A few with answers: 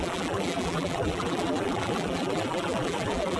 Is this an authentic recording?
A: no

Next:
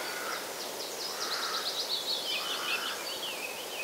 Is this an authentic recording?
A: no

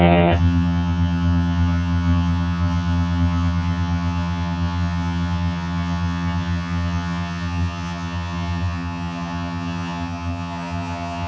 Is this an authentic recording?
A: no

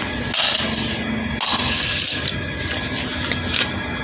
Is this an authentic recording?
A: yes